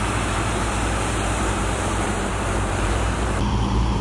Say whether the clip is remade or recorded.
remade